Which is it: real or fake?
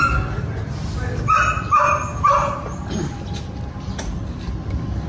real